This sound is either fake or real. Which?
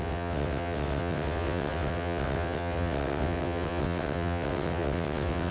fake